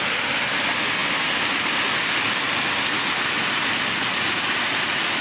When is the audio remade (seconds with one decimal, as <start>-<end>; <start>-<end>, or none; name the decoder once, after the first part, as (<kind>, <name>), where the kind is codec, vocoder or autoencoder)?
none